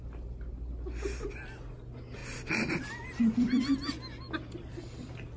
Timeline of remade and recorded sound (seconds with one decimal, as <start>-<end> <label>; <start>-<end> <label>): 0.0-5.4 recorded